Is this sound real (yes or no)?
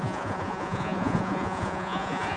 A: no